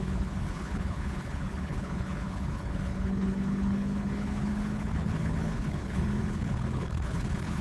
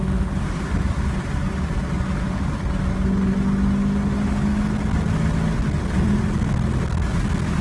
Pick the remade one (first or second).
first